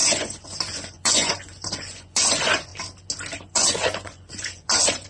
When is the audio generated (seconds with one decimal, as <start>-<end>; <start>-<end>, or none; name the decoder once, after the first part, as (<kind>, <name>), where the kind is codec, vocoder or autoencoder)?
0.0-2.7 (vocoder, Vocos); 3.4-5.1